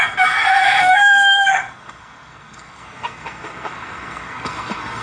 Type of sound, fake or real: fake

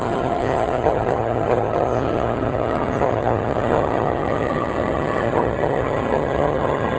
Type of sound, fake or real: fake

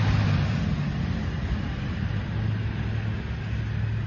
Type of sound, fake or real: real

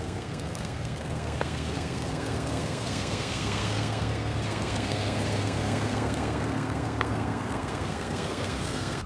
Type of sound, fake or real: fake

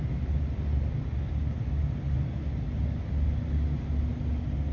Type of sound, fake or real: real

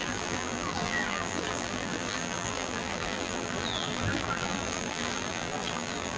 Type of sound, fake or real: fake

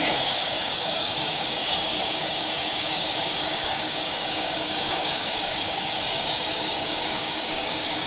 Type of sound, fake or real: fake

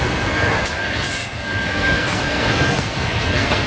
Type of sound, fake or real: fake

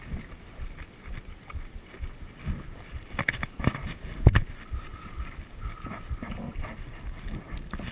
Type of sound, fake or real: real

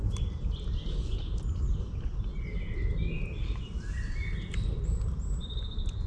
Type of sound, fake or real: real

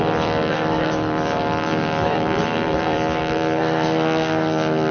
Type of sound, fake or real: fake